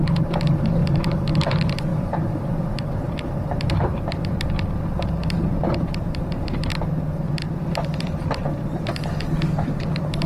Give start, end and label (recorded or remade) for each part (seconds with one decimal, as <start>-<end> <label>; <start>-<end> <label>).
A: 0.0-1.9 recorded; 1.9-3.2 remade; 3.2-5.5 recorded; 5.5-6.2 remade; 6.2-6.7 recorded; 6.7-8.8 remade; 8.8-10.3 recorded